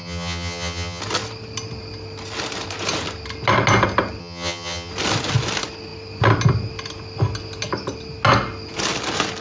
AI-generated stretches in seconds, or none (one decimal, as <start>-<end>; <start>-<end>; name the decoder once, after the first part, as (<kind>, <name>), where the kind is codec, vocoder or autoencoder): 0.0-1.0 (vocoder, HiFi-GAN); 4.2-4.9